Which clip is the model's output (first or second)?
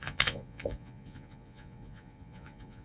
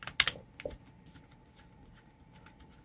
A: first